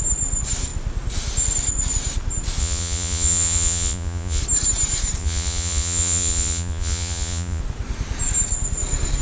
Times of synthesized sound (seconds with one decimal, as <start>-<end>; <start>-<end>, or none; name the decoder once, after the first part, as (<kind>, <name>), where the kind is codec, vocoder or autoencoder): 2.6-4.4 (vocoder, Vocos); 5.2-7.6